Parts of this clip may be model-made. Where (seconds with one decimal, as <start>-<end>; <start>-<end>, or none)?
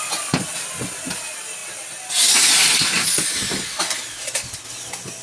none